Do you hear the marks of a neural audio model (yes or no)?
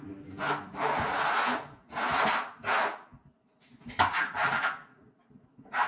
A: no